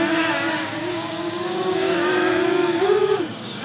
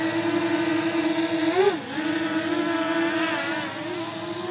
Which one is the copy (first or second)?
first